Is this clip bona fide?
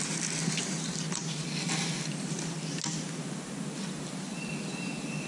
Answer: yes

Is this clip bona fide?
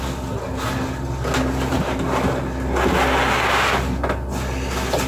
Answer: yes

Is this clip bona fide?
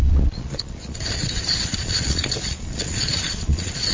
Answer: no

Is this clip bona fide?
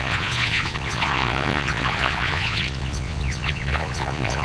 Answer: no